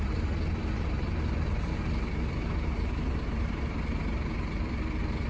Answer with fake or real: fake